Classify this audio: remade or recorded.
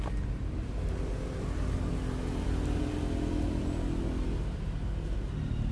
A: recorded